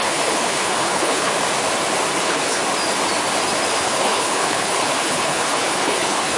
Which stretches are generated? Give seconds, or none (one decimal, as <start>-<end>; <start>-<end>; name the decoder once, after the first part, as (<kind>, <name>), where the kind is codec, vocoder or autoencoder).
0.0-1.3 (codec, HILCodec); 2.2-2.6; 3.8-6.4

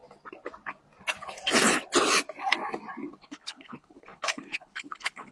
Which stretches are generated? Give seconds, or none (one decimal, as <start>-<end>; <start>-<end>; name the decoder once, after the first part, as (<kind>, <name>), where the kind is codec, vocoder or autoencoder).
3.2-5.3 (codec, HILCodec)